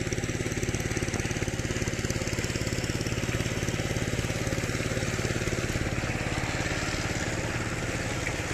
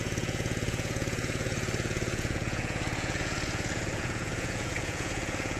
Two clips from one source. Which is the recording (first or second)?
first